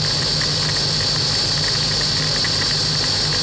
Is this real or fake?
real